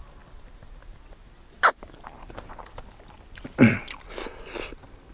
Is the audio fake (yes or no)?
no